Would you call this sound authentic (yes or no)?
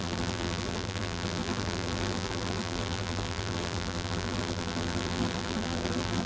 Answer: no